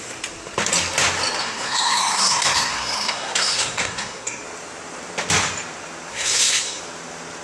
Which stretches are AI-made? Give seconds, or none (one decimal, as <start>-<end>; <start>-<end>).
1.4-4.4; 6.1-6.8